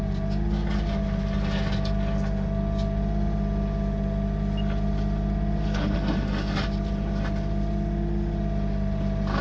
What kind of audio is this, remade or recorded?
recorded